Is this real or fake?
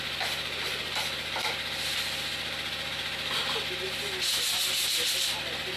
real